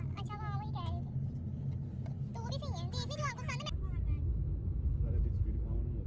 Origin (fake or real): real